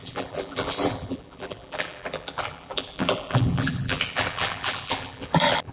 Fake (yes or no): yes